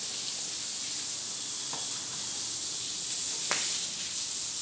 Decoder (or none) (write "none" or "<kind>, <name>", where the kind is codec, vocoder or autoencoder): none